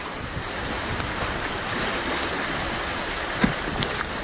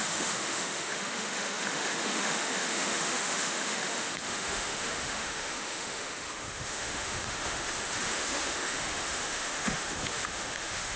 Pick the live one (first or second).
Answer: first